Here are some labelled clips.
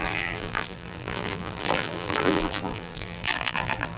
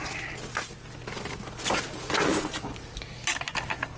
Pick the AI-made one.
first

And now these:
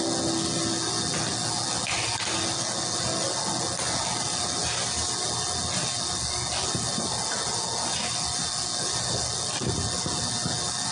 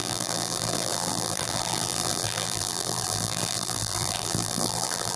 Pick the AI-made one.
second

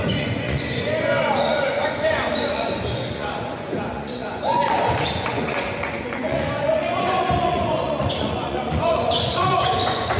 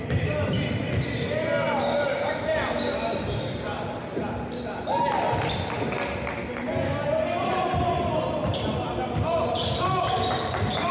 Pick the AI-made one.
first